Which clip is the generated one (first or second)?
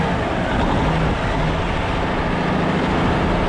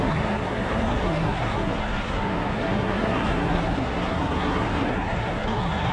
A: second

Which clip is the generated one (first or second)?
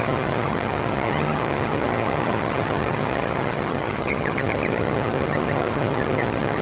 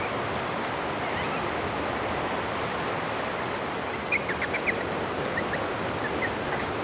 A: first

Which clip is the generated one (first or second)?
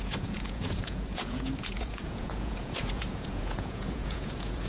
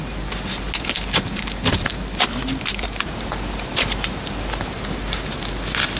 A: first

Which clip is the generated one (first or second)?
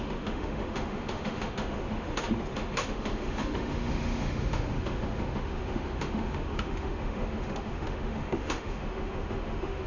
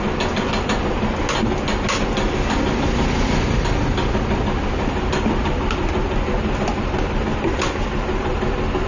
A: first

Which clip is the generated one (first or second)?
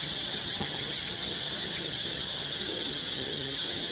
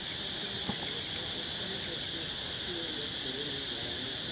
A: first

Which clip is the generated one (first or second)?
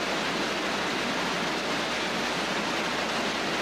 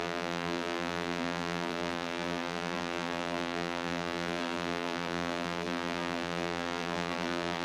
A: second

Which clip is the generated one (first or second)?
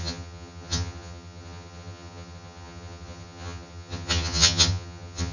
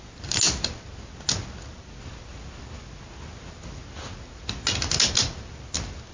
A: first